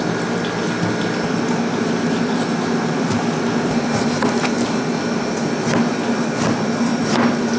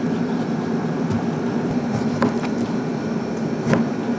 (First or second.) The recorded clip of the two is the first